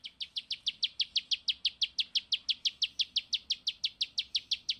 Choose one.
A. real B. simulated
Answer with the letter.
A